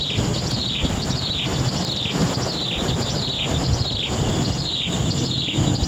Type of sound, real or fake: real